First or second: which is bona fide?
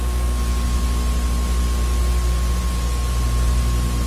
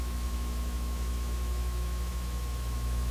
first